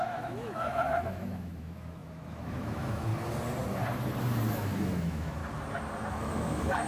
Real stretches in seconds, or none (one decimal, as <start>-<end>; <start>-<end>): 3.1-4.5; 5.4-6.1